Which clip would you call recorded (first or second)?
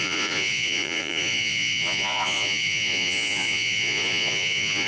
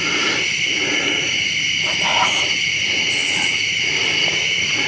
second